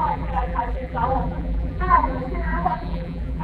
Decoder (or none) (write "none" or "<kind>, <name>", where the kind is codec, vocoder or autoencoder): vocoder, BigVGAN v2